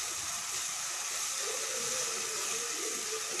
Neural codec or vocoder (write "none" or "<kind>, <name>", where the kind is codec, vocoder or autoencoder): none